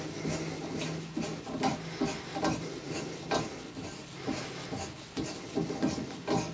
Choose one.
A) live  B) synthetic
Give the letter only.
A